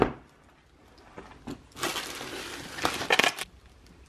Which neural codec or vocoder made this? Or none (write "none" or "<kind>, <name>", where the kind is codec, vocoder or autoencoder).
none